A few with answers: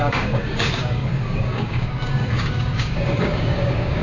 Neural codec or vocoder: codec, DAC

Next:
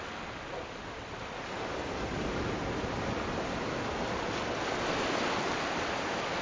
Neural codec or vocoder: none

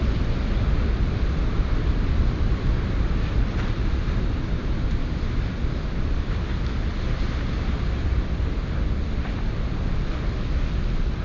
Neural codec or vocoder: none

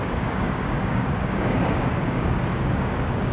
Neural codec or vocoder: codec, DAC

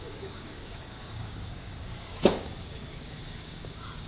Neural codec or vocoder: codec, DAC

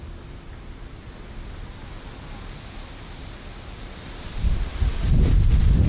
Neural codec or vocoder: none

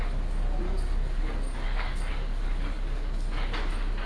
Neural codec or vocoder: codec, DAC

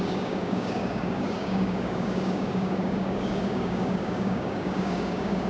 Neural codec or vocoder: codec, DAC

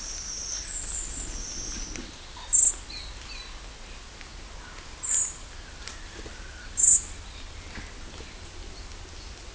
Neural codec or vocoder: none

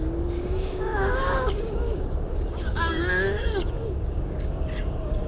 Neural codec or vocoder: codec, DAC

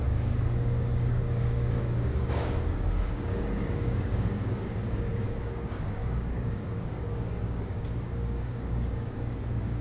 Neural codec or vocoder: codec, DAC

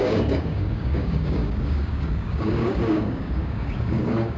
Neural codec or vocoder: codec, DAC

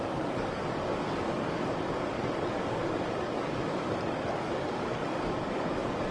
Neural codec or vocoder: codec, DAC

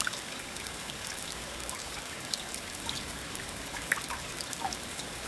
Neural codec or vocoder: codec, DAC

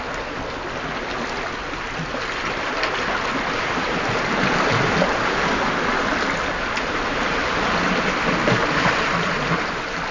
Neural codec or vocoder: none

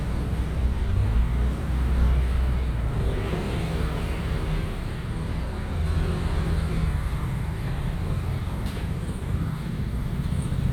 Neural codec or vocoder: codec, DAC